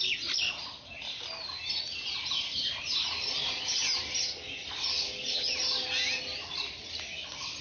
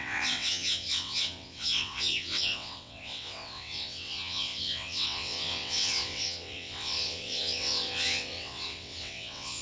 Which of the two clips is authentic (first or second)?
first